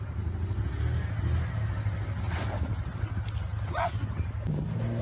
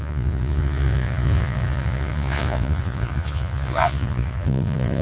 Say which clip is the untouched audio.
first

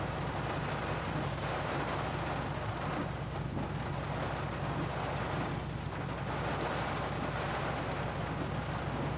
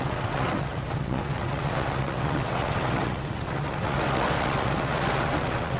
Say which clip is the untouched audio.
first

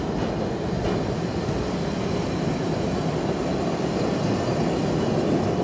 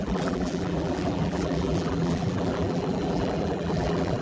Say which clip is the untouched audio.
first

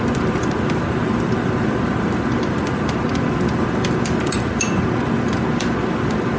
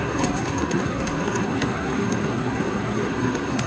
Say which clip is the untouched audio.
first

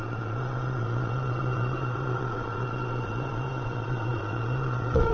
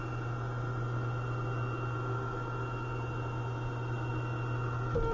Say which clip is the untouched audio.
second